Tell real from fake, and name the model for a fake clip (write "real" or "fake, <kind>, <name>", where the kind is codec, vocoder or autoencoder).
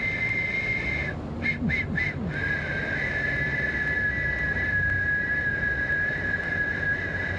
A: real